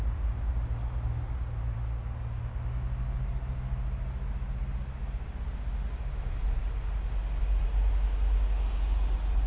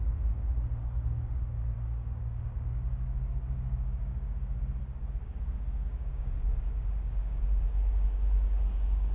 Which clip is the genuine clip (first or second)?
first